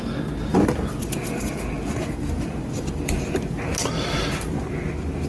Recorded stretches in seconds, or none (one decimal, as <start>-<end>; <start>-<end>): 0.0-0.5; 3.2-5.3